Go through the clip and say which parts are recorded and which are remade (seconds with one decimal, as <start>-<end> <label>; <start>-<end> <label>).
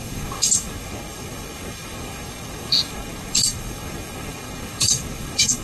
0.0-5.6 remade